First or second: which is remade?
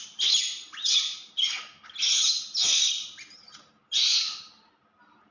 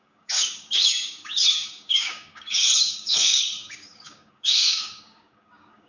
second